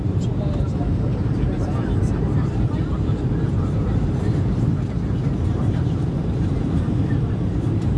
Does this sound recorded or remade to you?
remade